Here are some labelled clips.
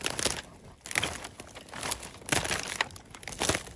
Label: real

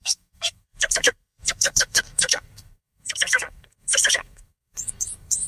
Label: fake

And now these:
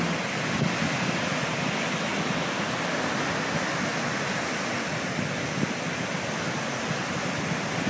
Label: real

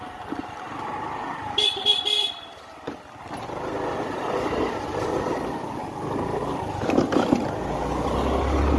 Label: real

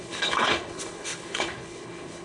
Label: fake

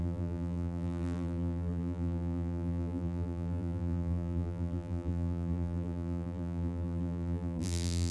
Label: fake